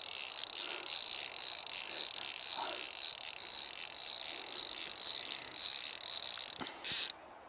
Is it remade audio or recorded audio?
recorded